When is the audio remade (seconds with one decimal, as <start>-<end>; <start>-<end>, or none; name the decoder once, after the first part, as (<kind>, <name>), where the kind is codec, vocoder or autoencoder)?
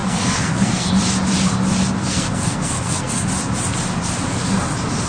0.0-0.9 (codec, SNAC); 2.0-3.3